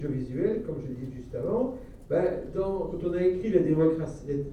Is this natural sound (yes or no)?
yes